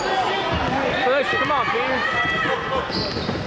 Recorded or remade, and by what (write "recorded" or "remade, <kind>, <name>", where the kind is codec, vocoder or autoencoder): recorded